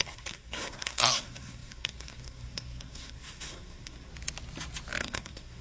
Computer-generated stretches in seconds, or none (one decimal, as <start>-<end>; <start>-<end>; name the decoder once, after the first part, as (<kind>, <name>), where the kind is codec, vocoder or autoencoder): 0.0-4.1 (codec, SNAC); 5.0-5.6